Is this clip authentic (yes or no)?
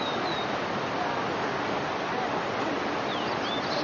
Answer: yes